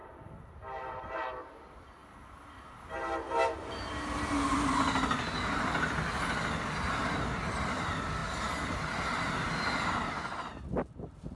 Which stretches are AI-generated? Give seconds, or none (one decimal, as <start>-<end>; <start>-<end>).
none